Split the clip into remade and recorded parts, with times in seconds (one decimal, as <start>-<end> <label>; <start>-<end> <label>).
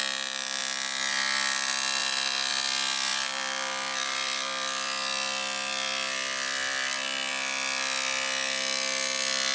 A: 0.0-2.0 recorded; 2.0-2.5 remade; 2.5-3.1 recorded; 3.1-7.3 remade; 7.3-9.5 recorded